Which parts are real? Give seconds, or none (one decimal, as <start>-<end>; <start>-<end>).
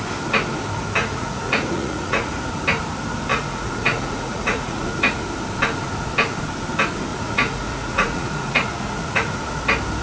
0.0-1.0; 2.3-3.3; 5.2-7.1; 9.6-10.0